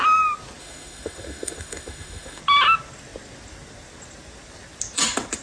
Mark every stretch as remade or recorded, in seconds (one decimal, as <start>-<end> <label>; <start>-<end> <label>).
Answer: 0.0-0.6 recorded; 0.6-2.4 remade; 2.4-5.4 recorded